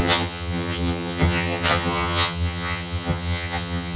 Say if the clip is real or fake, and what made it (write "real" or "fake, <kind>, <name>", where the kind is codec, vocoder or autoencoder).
fake, vocoder, HiFi-GAN